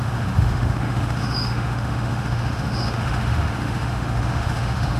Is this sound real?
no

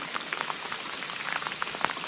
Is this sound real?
yes